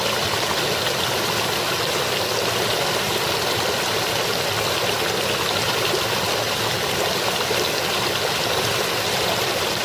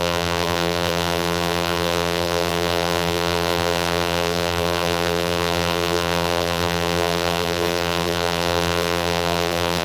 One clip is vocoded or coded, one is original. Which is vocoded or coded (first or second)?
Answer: second